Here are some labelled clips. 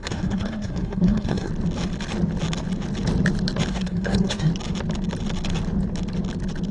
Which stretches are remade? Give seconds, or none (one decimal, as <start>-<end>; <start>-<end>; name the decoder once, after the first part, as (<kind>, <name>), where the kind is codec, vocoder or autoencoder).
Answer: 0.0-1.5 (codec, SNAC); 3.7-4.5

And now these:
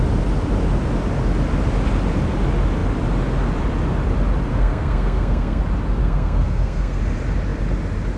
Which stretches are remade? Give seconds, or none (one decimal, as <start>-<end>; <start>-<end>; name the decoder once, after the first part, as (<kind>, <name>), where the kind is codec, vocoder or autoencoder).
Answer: 4.5-5.6 (codec, SNAC); 6.0-7.0

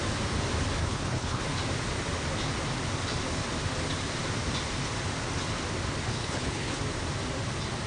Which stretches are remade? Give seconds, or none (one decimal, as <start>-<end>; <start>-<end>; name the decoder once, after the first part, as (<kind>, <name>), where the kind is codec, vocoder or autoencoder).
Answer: 0.8-1.4 (codec, HILCodec); 6.1-6.8

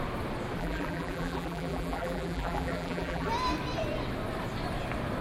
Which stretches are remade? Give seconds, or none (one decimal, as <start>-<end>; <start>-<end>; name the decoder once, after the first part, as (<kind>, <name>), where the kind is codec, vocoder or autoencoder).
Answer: 0.6-3.3 (vocoder, BigVGAN v2)

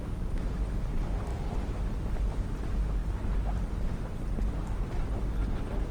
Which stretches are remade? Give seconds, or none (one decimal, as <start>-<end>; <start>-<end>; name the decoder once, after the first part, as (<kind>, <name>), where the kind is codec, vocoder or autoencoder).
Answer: none